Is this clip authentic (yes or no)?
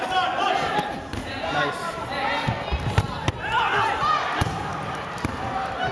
yes